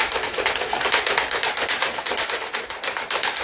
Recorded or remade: remade